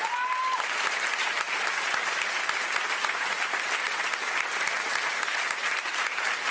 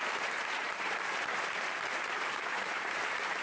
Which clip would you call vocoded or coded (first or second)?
second